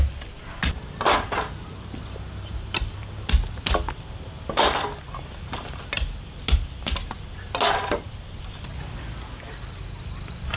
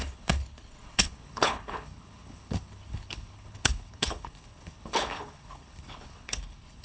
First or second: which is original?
first